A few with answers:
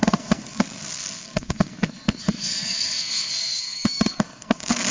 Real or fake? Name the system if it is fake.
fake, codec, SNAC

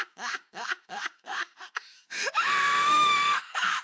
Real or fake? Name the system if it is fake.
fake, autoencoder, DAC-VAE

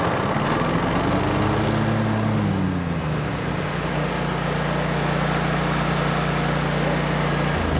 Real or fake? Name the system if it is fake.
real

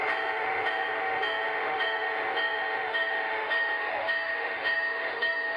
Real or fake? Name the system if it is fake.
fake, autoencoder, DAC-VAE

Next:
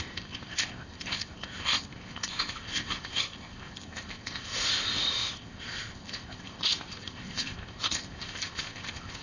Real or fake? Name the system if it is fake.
fake, codec, ZipCodec